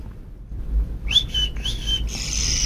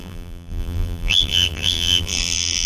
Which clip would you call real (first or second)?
first